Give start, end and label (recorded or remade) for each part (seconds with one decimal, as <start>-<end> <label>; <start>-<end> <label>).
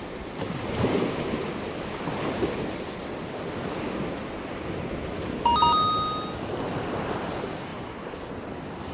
0.0-8.9 recorded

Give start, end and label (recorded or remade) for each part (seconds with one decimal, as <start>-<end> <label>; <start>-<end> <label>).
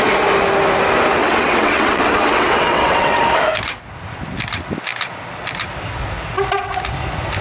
0.0-1.1 recorded; 1.1-3.2 remade; 3.2-7.4 recorded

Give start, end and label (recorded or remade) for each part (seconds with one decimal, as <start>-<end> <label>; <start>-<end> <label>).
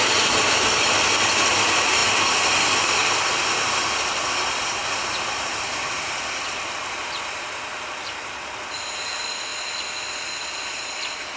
0.0-11.4 recorded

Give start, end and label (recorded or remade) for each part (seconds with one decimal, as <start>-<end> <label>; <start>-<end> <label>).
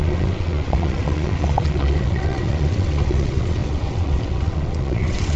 0.0-5.4 remade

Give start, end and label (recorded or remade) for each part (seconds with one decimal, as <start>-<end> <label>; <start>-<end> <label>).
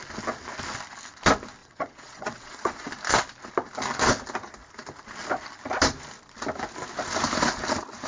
0.0-1.6 recorded; 1.6-2.9 remade; 2.9-8.1 recorded